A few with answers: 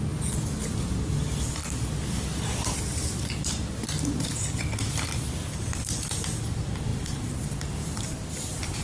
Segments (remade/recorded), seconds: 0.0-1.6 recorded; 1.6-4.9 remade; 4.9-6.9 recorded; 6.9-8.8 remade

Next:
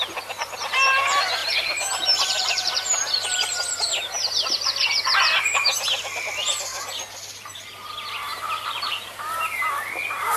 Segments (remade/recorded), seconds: 0.0-1.4 recorded; 1.4-5.4 remade; 5.4-8.3 recorded; 8.3-9.7 remade; 9.7-10.4 recorded

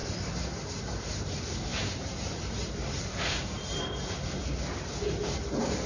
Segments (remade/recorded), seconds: 0.0-1.7 recorded; 1.7-3.9 remade; 3.9-5.9 recorded

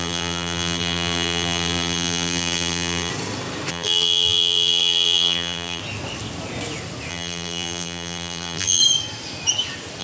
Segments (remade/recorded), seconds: 0.0-3.1 remade; 3.1-3.7 recorded; 3.7-5.8 remade; 5.8-7.1 recorded; 7.1-8.8 remade; 8.8-10.0 recorded

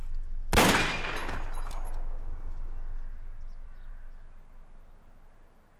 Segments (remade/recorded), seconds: 0.0-5.8 recorded